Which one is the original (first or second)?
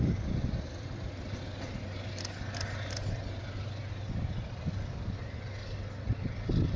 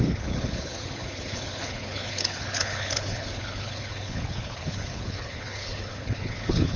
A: first